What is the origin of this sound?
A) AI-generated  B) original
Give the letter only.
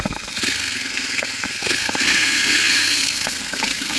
A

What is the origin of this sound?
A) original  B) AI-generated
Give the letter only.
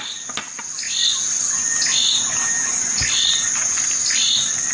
A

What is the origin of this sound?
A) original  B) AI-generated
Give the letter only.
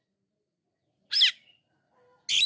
A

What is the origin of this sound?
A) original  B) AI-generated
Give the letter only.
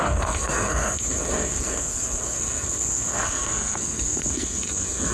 B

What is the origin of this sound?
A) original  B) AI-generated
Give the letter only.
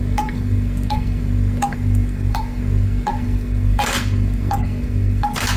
B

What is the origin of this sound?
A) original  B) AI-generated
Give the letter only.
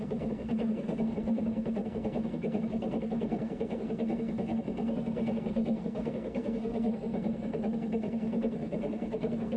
B